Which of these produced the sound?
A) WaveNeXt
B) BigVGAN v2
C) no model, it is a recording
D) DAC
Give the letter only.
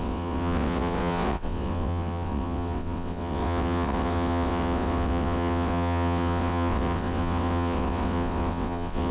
A